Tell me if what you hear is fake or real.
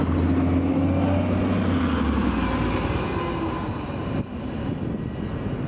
real